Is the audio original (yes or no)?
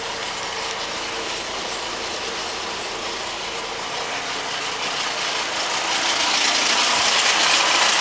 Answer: yes